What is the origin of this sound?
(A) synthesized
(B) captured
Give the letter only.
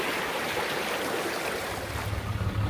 B